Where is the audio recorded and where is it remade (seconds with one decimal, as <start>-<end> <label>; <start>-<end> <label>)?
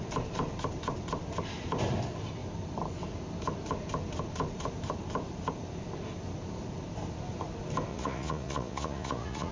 0.0-7.9 recorded; 7.9-9.5 remade